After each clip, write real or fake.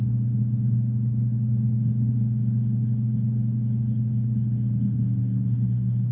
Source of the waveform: real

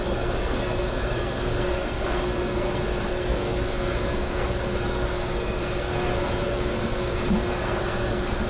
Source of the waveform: fake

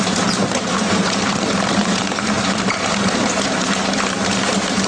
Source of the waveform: fake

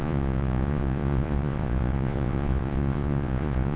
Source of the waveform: fake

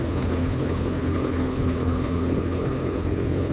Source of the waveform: fake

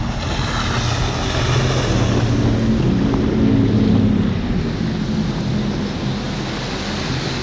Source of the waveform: real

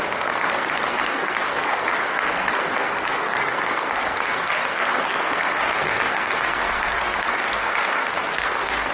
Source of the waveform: fake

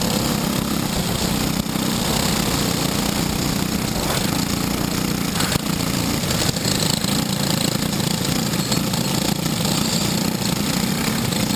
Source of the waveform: real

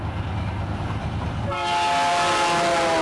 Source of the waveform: real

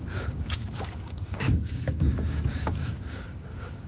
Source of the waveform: fake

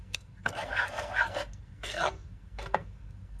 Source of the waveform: fake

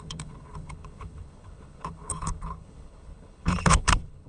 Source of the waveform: fake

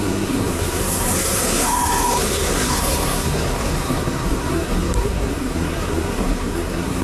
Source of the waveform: fake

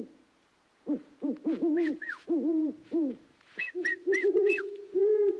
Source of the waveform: fake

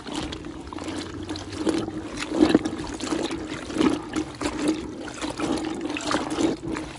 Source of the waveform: real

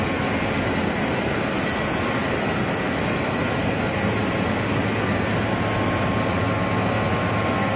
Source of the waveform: real